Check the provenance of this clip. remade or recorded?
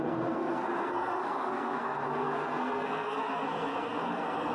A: remade